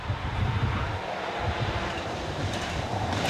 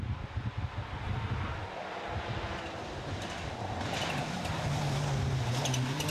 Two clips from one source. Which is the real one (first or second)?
second